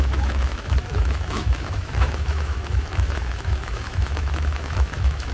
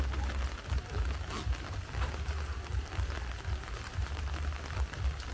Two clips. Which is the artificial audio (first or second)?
first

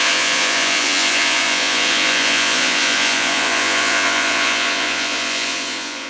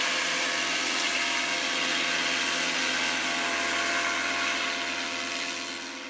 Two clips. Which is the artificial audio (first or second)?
first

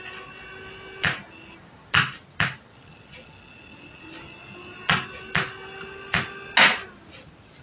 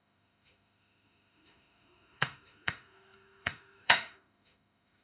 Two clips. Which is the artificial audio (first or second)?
second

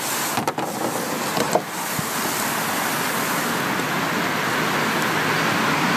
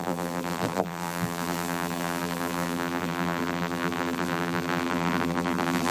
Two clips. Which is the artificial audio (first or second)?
second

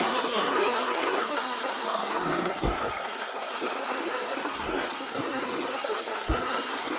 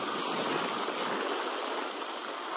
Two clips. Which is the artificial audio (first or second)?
first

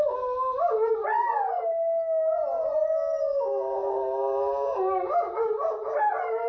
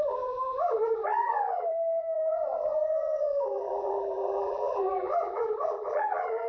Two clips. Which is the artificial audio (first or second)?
second